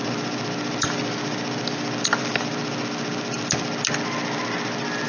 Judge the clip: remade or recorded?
recorded